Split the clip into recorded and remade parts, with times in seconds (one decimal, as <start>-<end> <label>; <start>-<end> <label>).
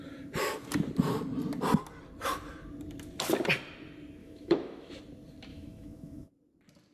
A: 0.0-4.2 recorded; 4.2-5.0 remade; 5.0-5.5 recorded; 5.5-6.3 remade; 6.3-6.9 recorded